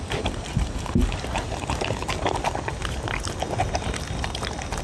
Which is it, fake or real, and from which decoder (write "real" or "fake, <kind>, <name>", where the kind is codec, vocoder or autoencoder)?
real